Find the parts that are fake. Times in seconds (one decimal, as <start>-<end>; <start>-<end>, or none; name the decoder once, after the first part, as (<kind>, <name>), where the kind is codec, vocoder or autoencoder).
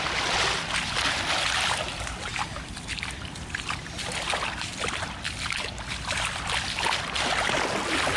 none